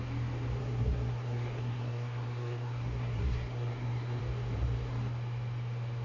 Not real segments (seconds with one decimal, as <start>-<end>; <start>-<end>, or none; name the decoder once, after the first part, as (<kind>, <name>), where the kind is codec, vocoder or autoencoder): 0.6-4.2 (codec, SNAC)